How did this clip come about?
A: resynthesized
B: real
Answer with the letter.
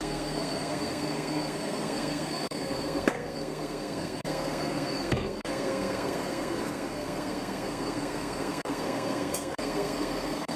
A